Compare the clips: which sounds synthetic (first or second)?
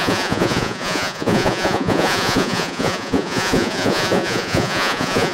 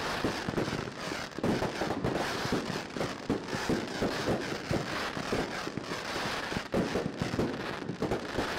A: first